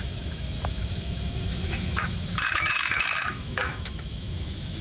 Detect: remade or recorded remade